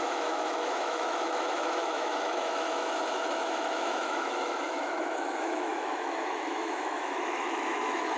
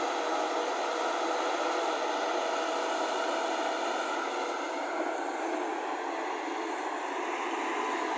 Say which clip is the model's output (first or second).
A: first